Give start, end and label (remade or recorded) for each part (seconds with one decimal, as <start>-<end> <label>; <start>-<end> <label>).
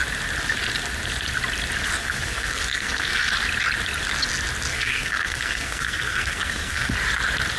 0.0-2.0 recorded; 2.0-3.3 remade; 3.3-4.7 recorded; 4.7-6.9 remade; 6.9-7.6 recorded